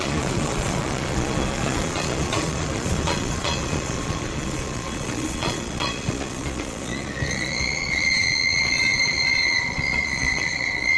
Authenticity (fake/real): fake